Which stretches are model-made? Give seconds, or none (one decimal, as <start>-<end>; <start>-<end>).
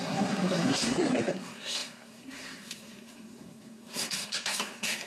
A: 0.0-5.1